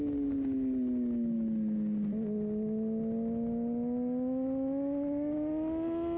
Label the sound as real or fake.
real